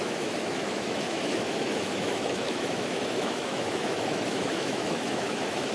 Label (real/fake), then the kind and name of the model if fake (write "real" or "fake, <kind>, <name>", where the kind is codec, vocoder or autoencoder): fake, autoencoder, DAC-VAE